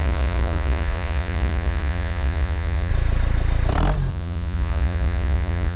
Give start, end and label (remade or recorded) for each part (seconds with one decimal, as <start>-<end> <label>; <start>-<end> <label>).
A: 0.0-2.9 remade; 2.9-4.1 recorded; 4.1-5.8 remade